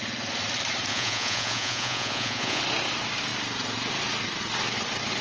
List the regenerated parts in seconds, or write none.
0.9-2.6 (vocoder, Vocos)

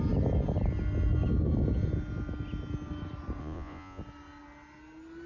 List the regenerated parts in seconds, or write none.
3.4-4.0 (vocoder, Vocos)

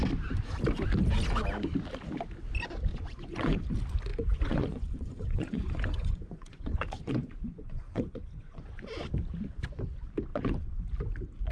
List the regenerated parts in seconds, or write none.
2.9-3.6 (vocoder, Vocos); 4.1-9.0; 10.3-10.8

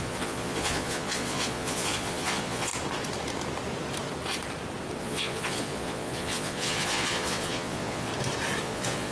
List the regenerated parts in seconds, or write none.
0.0-2.7 (vocoder, Vocos); 5.0-8.1; 8.6-9.1

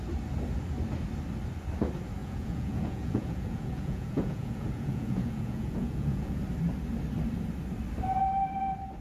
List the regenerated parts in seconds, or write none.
2.2-6.4 (vocoder, Vocos)